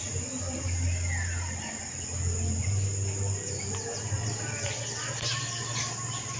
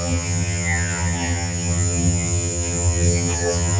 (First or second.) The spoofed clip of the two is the second